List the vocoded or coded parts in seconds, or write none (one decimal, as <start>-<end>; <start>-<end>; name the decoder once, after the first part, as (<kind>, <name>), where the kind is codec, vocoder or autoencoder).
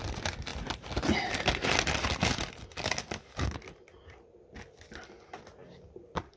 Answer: 5.6-6.4 (vocoder, BigVGAN v2)